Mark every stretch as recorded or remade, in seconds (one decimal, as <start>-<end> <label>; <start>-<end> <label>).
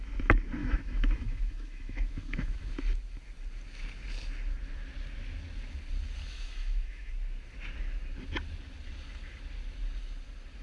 0.0-0.6 recorded; 0.6-2.7 remade; 2.7-6.2 recorded; 6.2-7.1 remade; 7.1-10.6 recorded